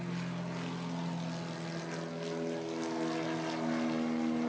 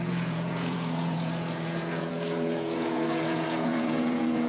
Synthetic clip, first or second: second